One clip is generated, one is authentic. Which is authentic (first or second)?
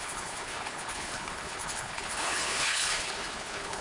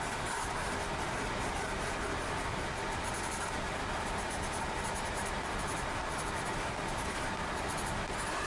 second